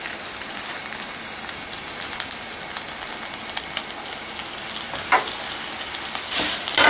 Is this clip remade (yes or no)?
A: no